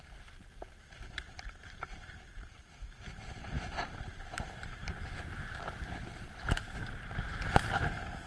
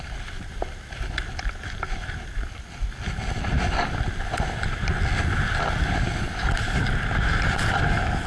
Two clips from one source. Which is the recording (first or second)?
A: second